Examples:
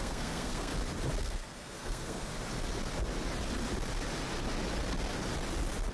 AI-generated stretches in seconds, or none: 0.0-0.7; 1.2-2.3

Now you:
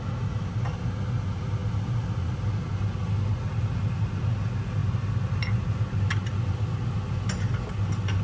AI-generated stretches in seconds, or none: none

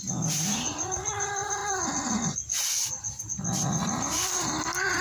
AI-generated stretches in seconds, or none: 0.0-1.6; 3.2-5.0